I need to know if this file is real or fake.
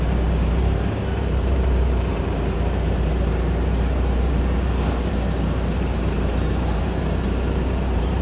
fake